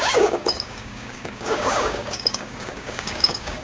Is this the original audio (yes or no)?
no